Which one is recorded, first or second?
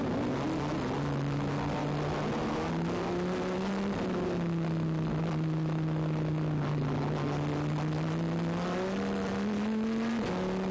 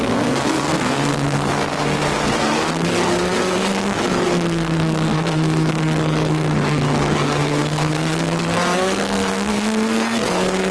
first